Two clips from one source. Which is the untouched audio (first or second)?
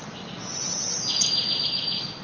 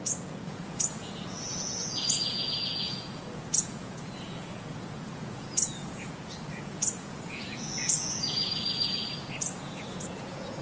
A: first